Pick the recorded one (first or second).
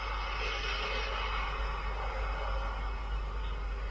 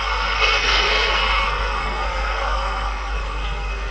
first